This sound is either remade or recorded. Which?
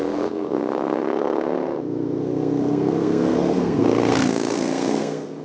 remade